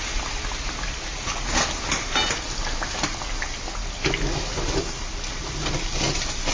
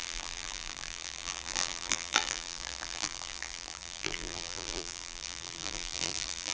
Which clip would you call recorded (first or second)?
first